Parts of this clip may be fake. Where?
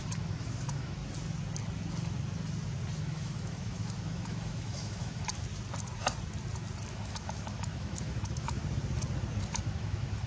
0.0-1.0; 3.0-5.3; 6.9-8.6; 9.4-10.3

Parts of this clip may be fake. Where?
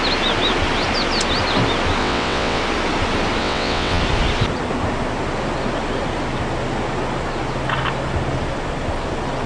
2.0-2.6; 3.4-4.0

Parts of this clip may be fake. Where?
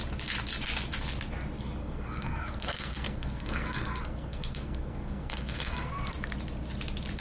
1.8-6.1